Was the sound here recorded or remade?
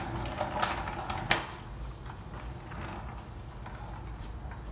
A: recorded